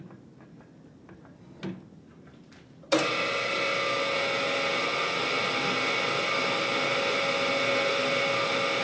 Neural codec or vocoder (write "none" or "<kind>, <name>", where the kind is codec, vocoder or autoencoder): none